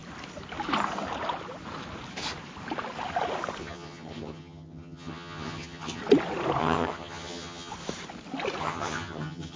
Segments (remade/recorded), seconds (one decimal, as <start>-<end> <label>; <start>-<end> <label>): 0.0-3.6 recorded; 3.6-6.0 remade; 6.0-6.6 recorded; 6.6-7.7 remade; 7.7-8.6 recorded; 8.6-9.6 remade